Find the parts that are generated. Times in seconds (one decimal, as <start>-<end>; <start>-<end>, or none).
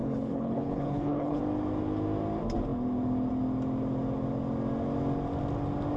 0.0-1.4